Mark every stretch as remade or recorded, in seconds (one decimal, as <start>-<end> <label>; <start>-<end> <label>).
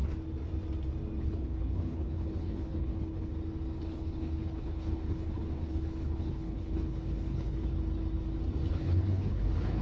0.0-1.2 recorded; 1.2-3.3 remade; 3.3-3.8 recorded; 3.8-7.7 remade; 7.7-8.7 recorded; 8.7-9.8 remade